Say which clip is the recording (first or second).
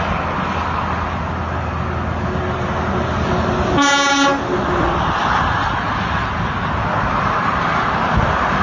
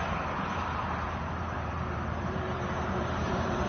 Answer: first